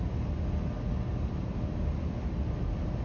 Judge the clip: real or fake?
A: real